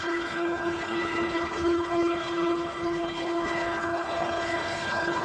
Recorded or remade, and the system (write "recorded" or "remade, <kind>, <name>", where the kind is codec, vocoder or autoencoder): remade, codec, HILCodec